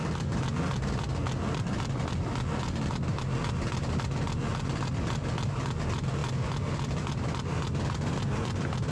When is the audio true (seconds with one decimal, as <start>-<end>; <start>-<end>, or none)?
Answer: 0.0-8.9